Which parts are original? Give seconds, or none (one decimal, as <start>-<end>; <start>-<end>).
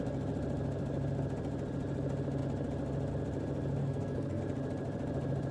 0.0-3.8; 4.4-5.5